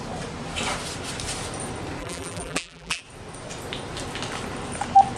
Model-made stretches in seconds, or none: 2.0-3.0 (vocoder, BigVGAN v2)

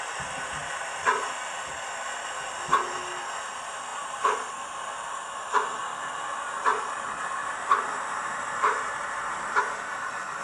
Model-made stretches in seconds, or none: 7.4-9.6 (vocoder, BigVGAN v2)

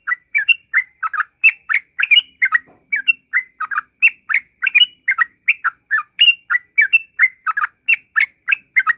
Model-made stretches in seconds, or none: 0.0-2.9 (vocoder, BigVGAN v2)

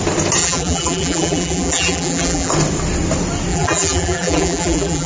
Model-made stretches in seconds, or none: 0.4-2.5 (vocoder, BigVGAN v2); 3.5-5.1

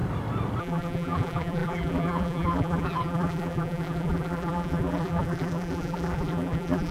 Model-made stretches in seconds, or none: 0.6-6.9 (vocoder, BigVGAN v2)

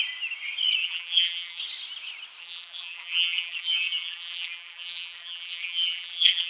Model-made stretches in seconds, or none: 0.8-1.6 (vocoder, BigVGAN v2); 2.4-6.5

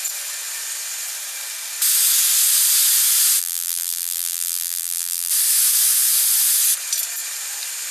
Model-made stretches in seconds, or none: 3.4-5.3 (vocoder, BigVGAN v2)

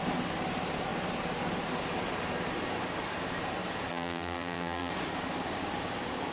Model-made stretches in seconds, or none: 3.9-4.9 (vocoder, BigVGAN v2)